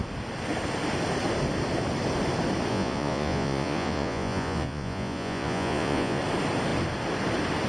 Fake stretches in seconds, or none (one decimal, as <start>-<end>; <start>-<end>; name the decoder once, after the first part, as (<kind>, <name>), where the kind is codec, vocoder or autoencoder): 2.7-6.2 (vocoder, Vocos)